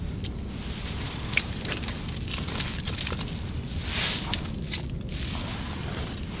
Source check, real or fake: real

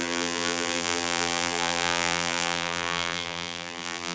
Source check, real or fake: fake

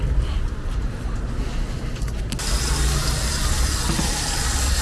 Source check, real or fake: real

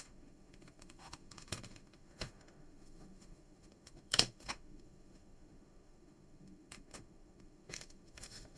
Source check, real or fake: fake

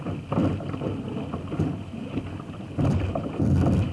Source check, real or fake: real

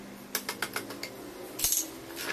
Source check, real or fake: real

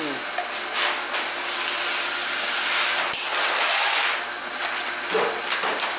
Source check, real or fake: real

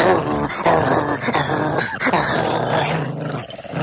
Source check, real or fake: real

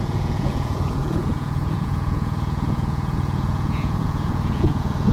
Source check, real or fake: fake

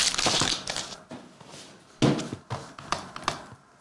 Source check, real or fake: real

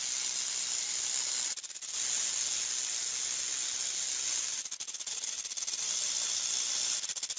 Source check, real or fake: real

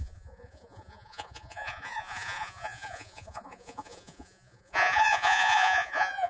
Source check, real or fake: fake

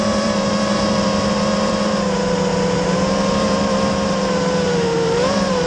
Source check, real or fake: fake